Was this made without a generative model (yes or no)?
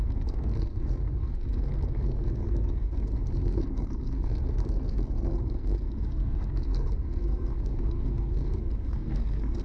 no